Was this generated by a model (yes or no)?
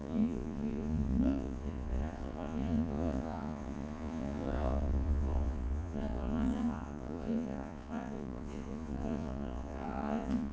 yes